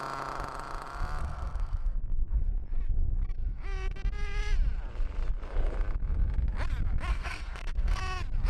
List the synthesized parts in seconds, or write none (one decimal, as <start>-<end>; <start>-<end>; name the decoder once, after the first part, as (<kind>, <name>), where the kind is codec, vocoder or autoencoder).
1.2-2.4 (codec, SNAC); 7.1-8.0